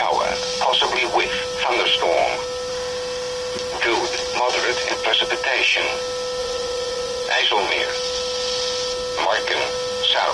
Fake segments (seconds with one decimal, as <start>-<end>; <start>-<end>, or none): 6.4-7.4